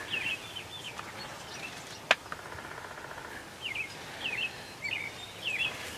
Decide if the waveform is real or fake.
real